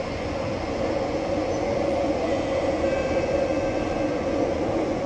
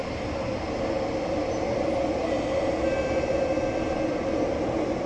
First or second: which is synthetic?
first